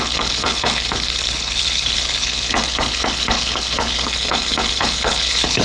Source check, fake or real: fake